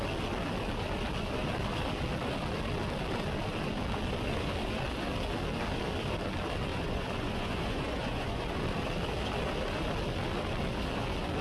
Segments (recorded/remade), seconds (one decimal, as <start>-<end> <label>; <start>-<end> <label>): 0.0-6.7 recorded; 6.7-8.6 remade; 8.6-11.4 recorded